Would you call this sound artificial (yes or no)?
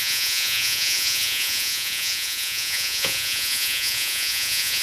yes